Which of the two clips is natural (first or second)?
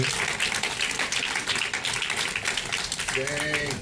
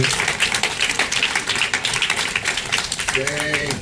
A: first